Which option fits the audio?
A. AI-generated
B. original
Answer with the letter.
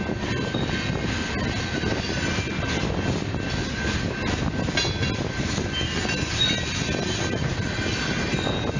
B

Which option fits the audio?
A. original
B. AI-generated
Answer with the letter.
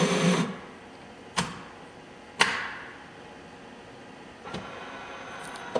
A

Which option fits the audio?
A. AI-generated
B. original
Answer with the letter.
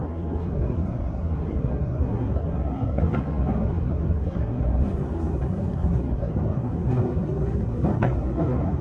A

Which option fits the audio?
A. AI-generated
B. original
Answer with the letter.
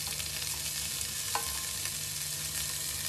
B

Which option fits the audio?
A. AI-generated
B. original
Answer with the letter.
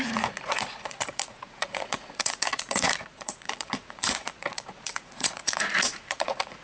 A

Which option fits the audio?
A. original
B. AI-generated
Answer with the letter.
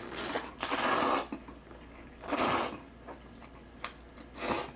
A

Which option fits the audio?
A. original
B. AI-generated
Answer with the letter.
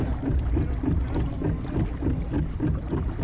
A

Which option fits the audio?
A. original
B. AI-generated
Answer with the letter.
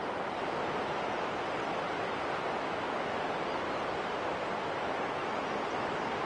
A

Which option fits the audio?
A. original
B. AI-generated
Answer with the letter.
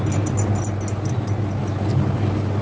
A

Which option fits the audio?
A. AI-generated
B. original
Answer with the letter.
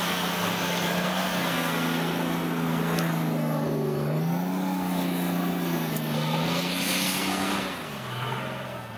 A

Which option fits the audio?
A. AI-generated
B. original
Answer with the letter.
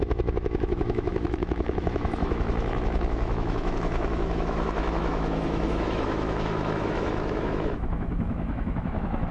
A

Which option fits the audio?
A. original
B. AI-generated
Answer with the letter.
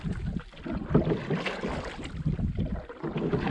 A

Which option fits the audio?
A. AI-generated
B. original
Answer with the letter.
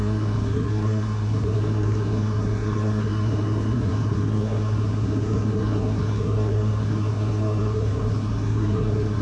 A